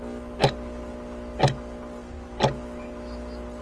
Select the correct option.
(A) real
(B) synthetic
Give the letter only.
A